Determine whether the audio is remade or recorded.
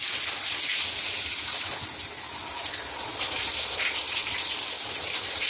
recorded